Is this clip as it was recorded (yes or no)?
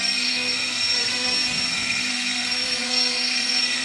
no